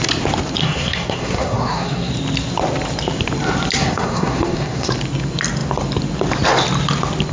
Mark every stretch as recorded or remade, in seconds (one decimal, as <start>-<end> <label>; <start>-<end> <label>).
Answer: 0.0-0.6 recorded; 0.6-2.1 remade; 2.1-3.8 recorded; 3.8-4.9 remade; 4.9-7.3 recorded